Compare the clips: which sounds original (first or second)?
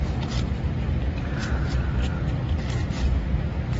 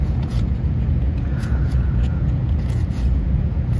first